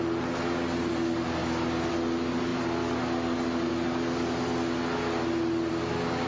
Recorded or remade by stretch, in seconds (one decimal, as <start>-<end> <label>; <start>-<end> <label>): 0.0-6.3 recorded